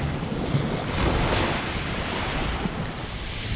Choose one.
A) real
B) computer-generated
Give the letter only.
A